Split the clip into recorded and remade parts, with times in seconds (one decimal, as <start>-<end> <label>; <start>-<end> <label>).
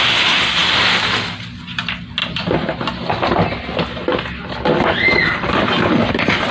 0.0-6.5 recorded